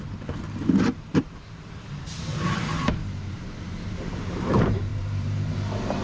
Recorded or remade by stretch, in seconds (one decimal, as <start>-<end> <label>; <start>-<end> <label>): 0.0-2.3 remade; 2.3-2.9 recorded; 2.9-6.0 remade